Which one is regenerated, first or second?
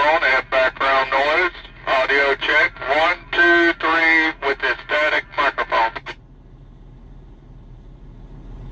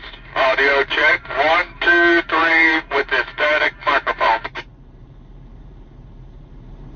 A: second